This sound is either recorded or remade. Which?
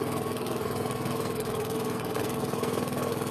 remade